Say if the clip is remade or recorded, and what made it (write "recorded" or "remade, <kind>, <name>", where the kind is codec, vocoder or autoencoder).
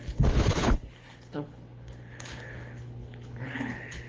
remade, codec, HILCodec